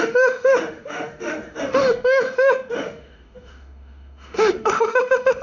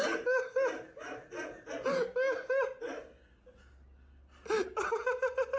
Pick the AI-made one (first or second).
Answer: first